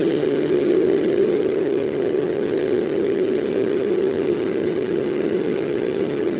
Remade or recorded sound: remade